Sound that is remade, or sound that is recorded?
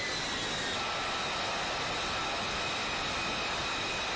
recorded